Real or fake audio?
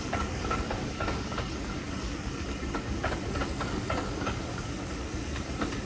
fake